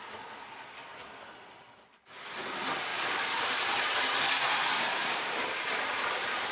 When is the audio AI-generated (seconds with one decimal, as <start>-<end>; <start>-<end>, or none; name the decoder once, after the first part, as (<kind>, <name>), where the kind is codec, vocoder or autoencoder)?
2.9-4.0 (vocoder, BigVGAN v2); 5.0-6.5